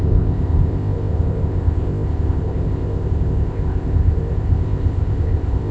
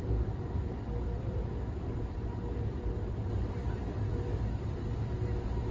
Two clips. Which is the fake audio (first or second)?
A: first